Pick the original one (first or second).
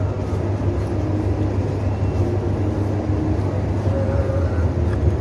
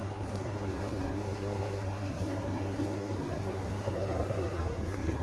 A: first